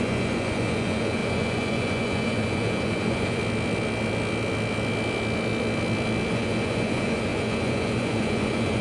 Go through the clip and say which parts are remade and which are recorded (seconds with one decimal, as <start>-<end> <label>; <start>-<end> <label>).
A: 0.0-3.4 remade; 3.4-6.3 recorded; 6.3-8.8 remade